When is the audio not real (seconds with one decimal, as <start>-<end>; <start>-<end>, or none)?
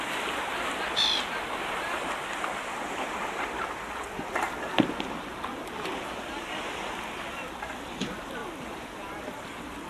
none